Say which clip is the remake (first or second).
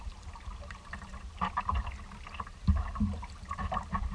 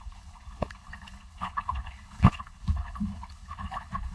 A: second